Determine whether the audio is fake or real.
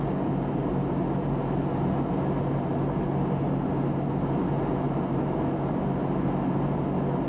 real